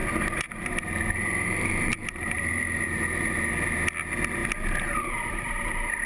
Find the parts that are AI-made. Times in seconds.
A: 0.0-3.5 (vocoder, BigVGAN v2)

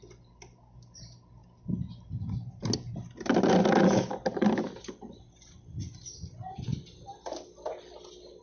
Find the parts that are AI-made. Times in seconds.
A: none